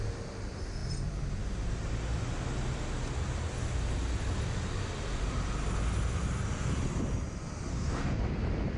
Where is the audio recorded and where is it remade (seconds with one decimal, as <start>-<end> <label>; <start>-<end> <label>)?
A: 0.0-7.7 recorded; 7.7-8.2 remade; 8.2-8.8 recorded